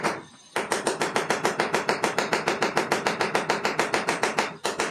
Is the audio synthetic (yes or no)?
yes